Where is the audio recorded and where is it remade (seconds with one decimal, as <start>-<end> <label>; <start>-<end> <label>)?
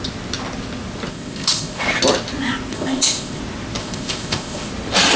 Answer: 0.0-1.1 recorded; 1.1-1.8 remade; 1.8-2.7 recorded; 2.7-3.4 remade; 3.4-3.8 recorded; 3.8-4.7 remade; 4.7-5.2 recorded